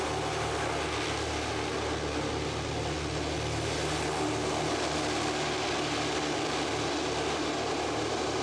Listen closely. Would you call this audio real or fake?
real